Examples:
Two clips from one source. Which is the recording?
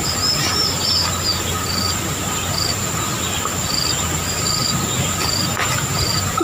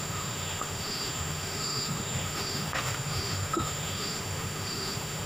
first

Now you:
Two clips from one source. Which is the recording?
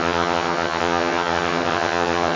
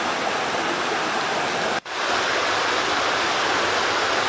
second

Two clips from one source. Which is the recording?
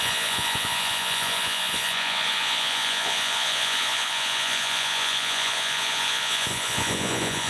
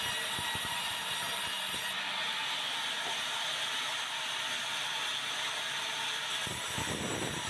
second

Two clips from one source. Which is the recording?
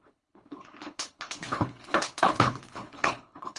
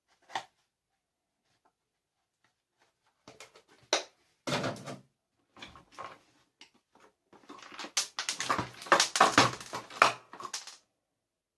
second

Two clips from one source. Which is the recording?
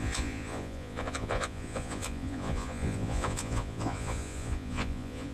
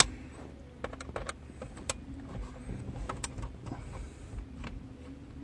second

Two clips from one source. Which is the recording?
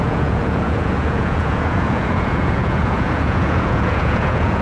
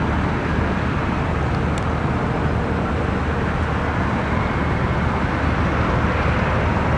second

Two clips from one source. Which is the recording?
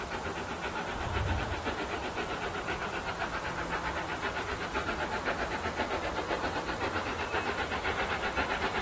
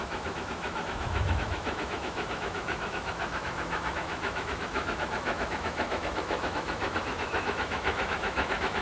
first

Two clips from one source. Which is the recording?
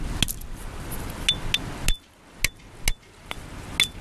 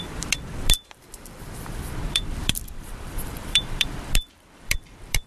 first